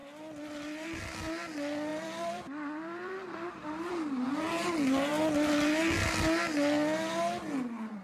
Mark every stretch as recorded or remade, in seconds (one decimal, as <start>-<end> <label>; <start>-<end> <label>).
0.0-1.0 remade; 1.0-1.9 recorded; 1.9-3.9 remade; 3.9-8.0 recorded